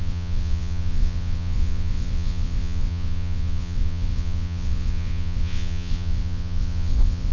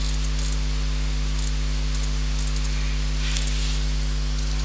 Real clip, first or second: second